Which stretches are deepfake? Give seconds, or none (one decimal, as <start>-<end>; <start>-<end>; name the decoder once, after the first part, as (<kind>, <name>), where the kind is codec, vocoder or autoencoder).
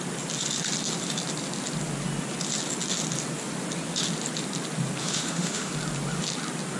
5.0-5.7 (autoencoder, DAC-VAE)